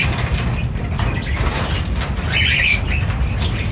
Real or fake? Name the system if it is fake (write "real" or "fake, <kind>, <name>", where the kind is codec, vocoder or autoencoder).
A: fake, vocoder, BigVGAN v2